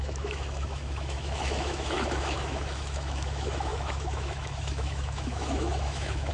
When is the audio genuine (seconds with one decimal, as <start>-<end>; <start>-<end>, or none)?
none